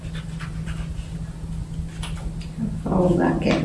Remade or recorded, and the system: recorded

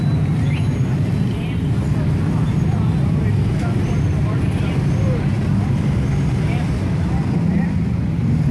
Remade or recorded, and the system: recorded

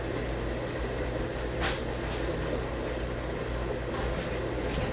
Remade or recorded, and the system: recorded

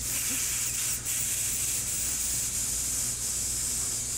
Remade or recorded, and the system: recorded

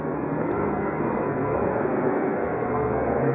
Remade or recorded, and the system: remade, codec, SNAC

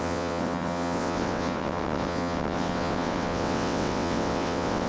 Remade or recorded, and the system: remade, vocoder, WaveNeXt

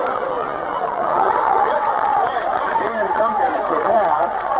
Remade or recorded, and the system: remade, vocoder, WaveNeXt